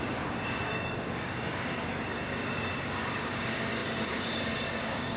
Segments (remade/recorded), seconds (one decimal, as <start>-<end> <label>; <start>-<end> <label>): 0.0-5.2 remade